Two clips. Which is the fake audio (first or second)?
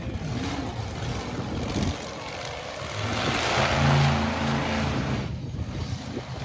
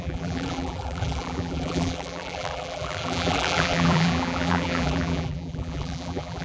second